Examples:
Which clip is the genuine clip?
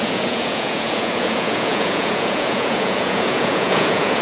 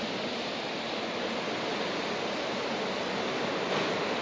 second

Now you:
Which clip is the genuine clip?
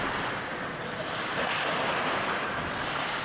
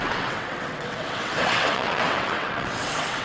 first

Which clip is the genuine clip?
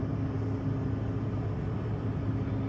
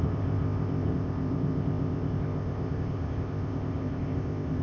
first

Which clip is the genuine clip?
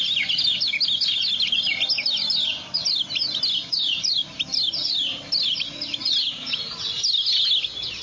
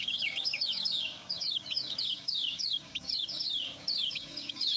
first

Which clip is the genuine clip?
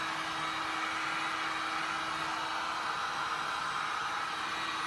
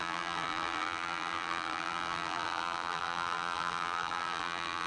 first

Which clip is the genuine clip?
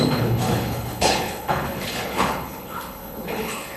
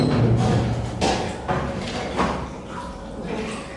second